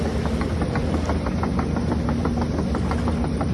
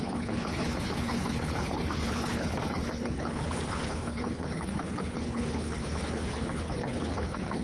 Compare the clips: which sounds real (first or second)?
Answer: first